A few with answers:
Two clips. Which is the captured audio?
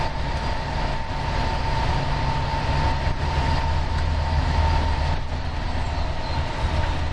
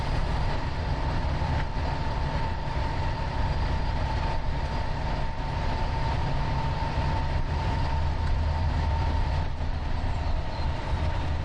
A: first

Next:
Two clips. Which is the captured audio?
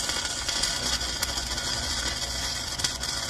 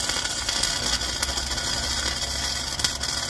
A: second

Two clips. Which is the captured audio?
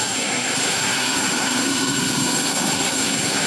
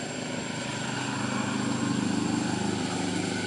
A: second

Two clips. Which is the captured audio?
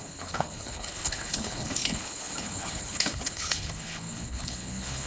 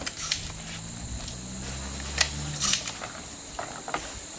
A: second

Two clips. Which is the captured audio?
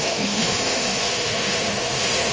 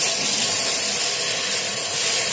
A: second